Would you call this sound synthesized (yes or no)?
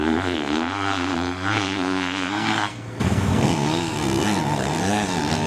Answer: yes